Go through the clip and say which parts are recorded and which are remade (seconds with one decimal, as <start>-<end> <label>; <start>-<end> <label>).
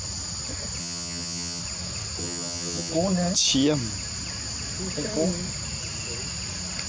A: 0.0-0.8 recorded; 0.8-1.6 remade; 1.6-2.2 recorded; 2.2-2.9 remade; 2.9-6.9 recorded